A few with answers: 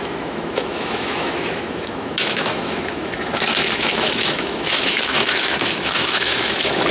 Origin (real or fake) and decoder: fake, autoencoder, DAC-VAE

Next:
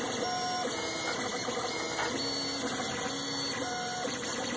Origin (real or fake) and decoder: real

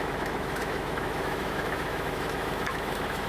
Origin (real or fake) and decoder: fake, autoencoder, DAC-VAE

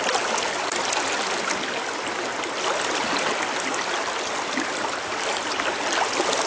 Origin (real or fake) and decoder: real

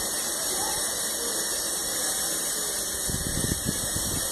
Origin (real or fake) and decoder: real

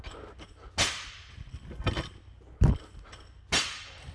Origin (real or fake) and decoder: real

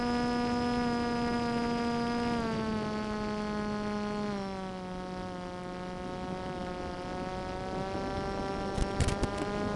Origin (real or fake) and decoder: real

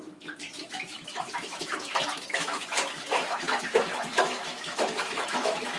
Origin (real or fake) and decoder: fake, autoencoder, DAC-VAE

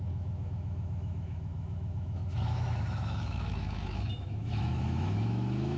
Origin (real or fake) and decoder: fake, autoencoder, DAC-VAE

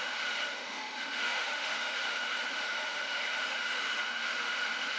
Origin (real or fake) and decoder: fake, autoencoder, DAC-VAE